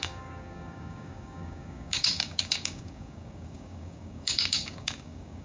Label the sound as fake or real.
fake